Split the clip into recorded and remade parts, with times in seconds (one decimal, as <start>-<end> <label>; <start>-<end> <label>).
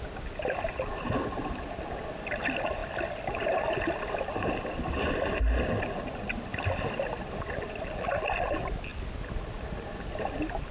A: 0.0-10.7 recorded